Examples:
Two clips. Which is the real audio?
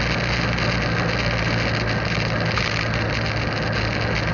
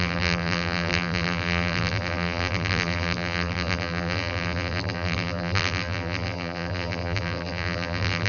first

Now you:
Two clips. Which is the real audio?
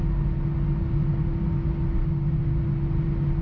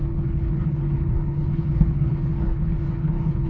first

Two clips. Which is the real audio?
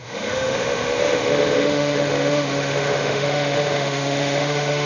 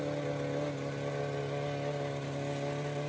second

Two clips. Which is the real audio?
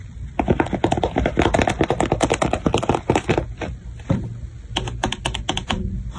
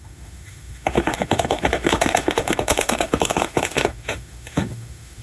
first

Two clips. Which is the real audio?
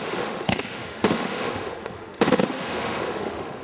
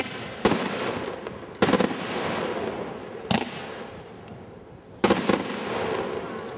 second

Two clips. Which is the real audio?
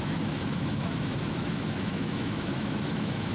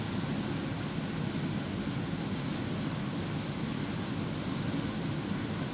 second